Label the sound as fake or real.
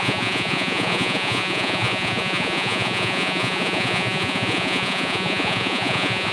fake